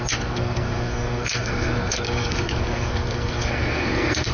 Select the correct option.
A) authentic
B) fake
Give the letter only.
B